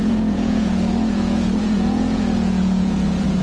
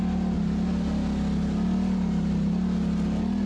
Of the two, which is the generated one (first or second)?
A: first